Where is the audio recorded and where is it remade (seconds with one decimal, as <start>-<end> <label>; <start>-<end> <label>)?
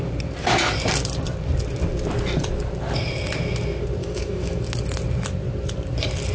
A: 0.0-4.0 recorded; 4.0-4.6 remade; 4.6-6.3 recorded